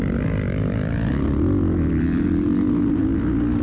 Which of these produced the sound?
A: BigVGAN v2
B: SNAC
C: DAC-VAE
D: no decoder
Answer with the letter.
D